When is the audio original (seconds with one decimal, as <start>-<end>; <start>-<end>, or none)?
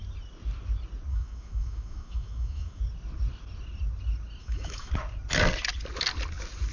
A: 0.0-1.1; 2.8-4.4; 4.9-6.7